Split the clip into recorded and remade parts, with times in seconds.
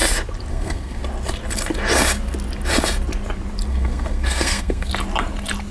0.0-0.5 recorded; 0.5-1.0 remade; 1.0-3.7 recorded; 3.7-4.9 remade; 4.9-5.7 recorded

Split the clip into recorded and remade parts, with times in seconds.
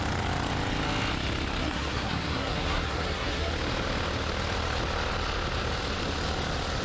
0.0-1.6 recorded; 1.6-3.5 remade; 3.5-6.8 recorded